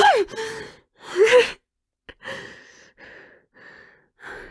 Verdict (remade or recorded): recorded